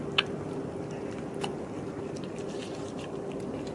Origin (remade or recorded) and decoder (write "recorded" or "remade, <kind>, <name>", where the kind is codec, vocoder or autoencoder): recorded